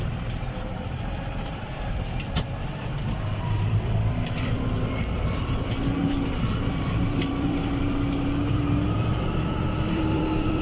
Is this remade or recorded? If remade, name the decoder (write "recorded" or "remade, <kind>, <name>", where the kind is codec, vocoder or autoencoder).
remade, vocoder, BigVGAN v2